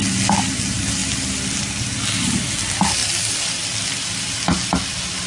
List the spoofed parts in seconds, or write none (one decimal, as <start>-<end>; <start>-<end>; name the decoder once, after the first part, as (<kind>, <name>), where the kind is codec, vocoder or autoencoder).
none